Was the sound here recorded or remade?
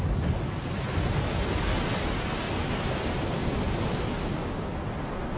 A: recorded